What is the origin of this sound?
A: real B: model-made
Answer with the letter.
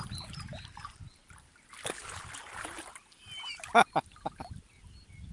A